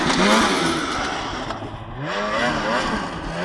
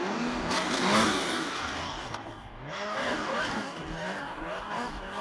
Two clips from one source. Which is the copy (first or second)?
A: second